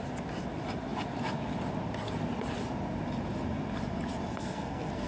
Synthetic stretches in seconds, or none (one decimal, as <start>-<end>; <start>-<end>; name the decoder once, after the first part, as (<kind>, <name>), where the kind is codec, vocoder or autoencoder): 4.3-5.1 (codec, SNAC)